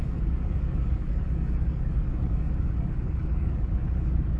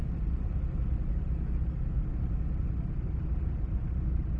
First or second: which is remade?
first